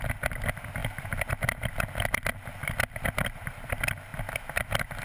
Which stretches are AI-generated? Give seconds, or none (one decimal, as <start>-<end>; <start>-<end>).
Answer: none